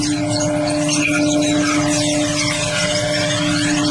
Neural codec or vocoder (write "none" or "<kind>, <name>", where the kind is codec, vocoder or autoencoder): none